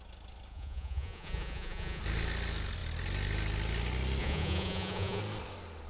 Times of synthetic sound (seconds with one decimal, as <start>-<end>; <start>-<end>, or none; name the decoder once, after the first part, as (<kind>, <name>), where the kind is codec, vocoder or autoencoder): 0.5-2.0 (vocoder, Vocos); 4.2-5.2